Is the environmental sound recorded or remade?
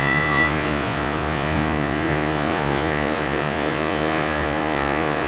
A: remade